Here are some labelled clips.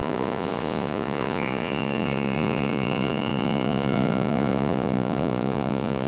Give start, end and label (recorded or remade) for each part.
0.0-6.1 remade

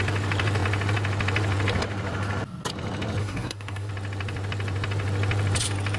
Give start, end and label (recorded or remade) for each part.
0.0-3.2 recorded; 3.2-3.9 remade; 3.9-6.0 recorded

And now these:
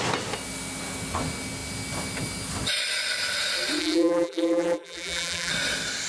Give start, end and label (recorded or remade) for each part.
0.0-3.8 recorded; 3.8-5.5 remade; 5.5-6.1 recorded